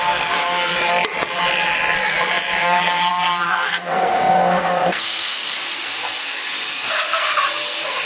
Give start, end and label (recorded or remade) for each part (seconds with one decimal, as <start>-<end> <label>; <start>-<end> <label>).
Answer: 0.0-0.7 remade; 0.7-2.6 recorded; 2.6-8.1 remade